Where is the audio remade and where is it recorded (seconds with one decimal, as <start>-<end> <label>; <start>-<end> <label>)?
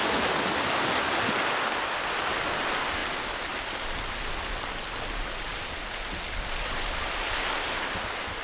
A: 0.0-8.4 recorded